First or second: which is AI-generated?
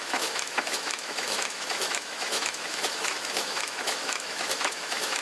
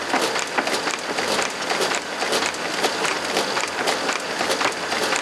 first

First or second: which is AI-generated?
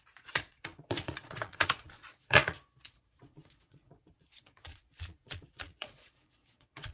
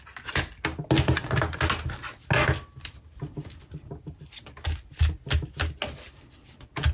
first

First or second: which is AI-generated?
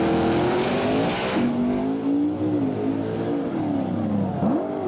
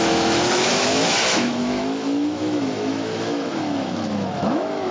second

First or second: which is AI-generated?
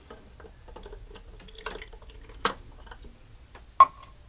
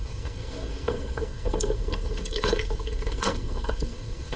second